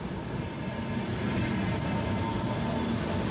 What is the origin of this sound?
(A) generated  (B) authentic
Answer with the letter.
B